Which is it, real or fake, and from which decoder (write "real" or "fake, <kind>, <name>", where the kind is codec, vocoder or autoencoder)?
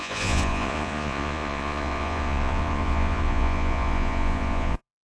fake, vocoder, Vocos